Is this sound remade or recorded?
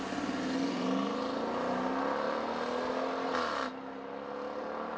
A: recorded